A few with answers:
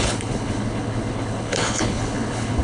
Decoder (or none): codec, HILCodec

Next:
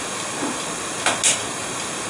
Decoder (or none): none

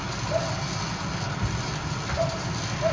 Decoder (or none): none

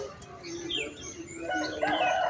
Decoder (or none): none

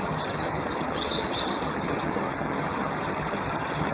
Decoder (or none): vocoder, HiFi-GAN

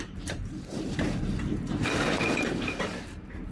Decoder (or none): vocoder, BigVGAN v2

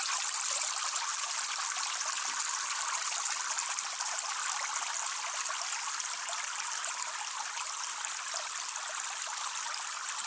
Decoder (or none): none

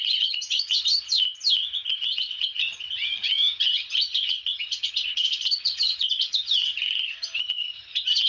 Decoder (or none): vocoder, HiFi-GAN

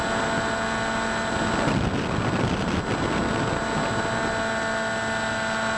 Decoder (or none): none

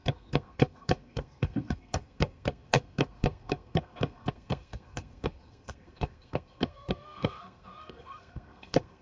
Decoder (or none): codec, SNAC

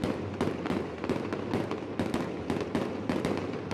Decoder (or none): none